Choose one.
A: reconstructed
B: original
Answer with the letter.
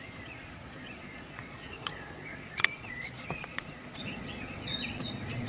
A